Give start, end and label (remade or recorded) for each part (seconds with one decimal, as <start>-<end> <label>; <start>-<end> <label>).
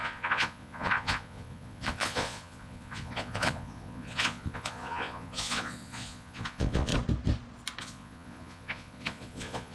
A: 0.0-6.9 remade; 6.9-7.8 recorded; 7.8-9.7 remade